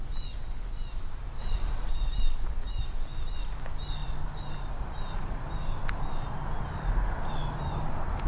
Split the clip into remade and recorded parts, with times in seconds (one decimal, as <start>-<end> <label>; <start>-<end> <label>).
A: 0.0-1.4 recorded; 1.4-1.9 remade; 1.9-8.3 recorded